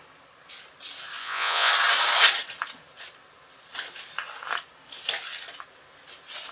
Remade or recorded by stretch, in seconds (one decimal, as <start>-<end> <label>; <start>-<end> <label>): 0.0-1.2 recorded; 1.2-1.7 remade; 1.7-6.5 recorded